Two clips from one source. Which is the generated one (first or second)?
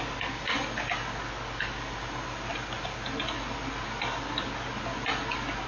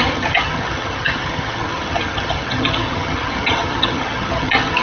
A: second